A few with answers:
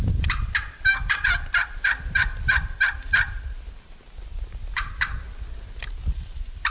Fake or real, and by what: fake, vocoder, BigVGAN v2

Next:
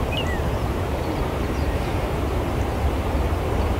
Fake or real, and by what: fake, vocoder, BigVGAN v2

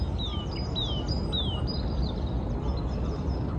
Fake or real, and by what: real